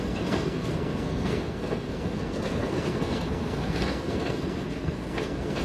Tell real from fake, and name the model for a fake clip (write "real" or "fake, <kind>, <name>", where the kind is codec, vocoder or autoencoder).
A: fake, codec, SNAC